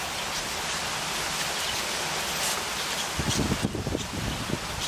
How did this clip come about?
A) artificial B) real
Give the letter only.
B